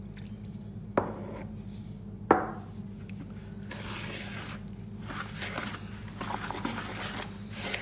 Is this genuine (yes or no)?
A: yes